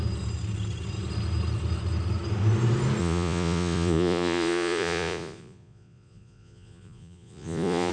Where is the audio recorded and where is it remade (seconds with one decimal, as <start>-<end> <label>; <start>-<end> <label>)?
0.0-3.0 recorded; 3.0-7.9 remade